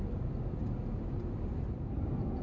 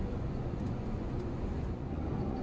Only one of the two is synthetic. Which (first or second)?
second